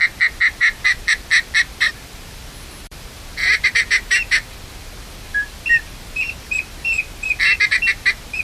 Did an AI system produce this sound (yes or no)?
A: yes